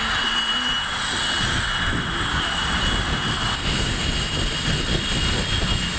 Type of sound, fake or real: real